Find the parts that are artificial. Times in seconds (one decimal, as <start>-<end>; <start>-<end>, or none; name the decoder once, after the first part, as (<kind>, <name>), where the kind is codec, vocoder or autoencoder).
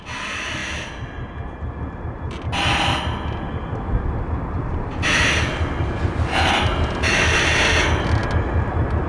none